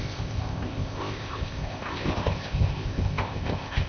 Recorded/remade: remade